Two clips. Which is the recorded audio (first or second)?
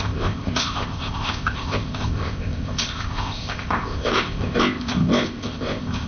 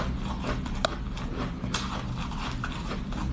second